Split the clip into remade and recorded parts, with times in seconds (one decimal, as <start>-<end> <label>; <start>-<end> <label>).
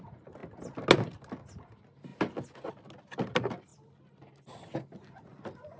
0.0-5.8 recorded